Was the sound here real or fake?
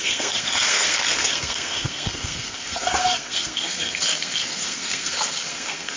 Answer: fake